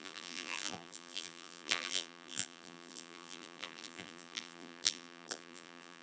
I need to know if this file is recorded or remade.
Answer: remade